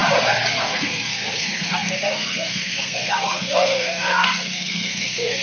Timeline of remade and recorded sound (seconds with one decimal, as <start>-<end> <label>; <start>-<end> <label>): 0.0-0.5 recorded; 0.5-5.4 remade